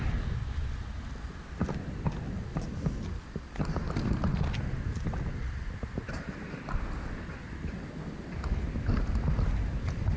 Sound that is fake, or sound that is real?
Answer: real